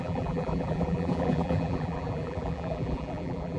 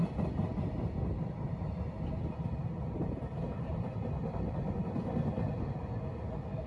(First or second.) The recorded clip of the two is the second